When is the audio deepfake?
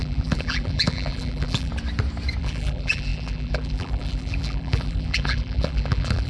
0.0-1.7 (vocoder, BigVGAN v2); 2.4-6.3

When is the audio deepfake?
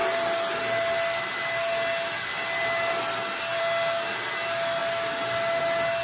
none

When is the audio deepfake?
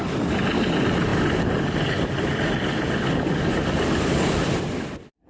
none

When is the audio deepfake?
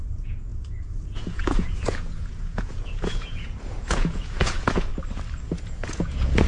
0.0-4.9 (vocoder, Vocos); 5.7-6.5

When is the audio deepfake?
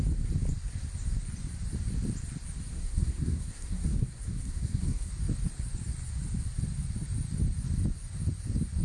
2.7-5.1 (codec, SNAC)